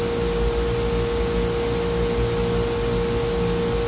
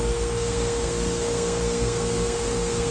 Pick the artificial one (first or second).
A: second